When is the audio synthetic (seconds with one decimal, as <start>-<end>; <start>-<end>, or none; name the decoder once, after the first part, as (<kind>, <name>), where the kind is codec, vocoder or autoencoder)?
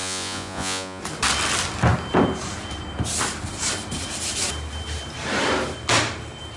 0.0-1.0 (vocoder, Vocos)